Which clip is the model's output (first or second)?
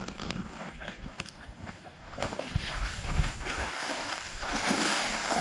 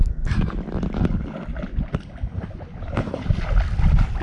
first